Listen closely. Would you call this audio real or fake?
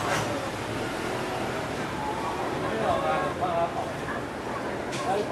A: real